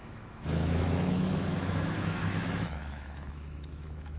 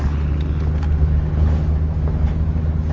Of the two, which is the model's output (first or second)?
first